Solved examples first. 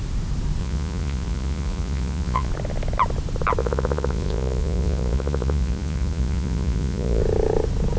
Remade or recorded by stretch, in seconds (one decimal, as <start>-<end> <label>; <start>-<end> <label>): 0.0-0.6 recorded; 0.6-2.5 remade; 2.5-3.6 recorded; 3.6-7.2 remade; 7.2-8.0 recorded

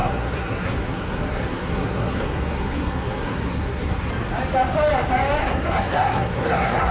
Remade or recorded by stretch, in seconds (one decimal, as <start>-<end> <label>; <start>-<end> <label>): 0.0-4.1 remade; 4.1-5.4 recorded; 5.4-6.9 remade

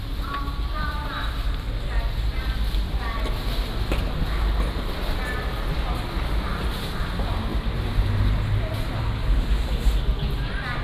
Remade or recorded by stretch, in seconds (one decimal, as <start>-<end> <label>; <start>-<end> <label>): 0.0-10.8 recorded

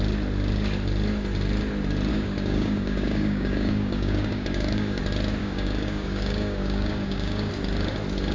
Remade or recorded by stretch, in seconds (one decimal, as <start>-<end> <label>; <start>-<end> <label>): 0.0-2.1 recorded; 2.1-5.0 remade; 5.0-5.4 recorded; 5.4-7.5 remade; 7.5-8.3 recorded

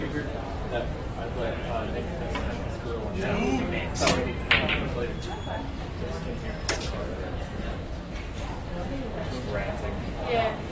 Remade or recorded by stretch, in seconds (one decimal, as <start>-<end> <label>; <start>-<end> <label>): 0.0-1.9 remade; 1.9-6.2 recorded; 6.2-7.3 remade; 7.3-10.7 recorded

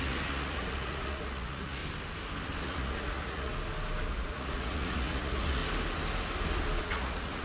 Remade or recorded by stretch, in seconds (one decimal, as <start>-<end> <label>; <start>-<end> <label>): 0.0-1.8 remade; 1.8-2.6 recorded; 2.6-3.5 remade; 3.5-4.1 recorded; 4.1-5.6 remade; 5.6-6.8 recorded; 6.8-7.4 remade

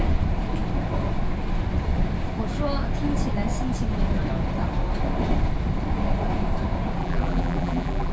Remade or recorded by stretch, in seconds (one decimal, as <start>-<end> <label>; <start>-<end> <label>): 0.0-7.0 recorded; 7.0-8.1 remade